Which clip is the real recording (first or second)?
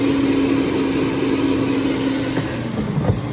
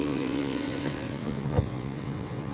first